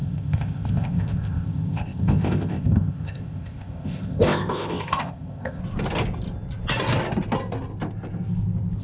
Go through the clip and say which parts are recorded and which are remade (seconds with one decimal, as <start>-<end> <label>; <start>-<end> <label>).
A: 0.0-5.6 remade; 5.6-8.8 recorded